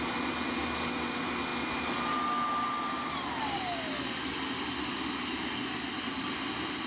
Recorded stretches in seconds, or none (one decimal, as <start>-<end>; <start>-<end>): 0.0-6.9